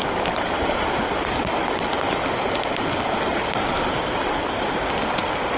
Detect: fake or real real